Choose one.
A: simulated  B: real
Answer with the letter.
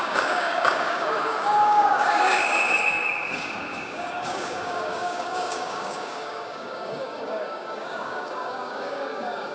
A